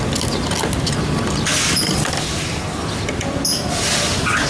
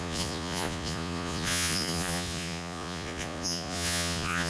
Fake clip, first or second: second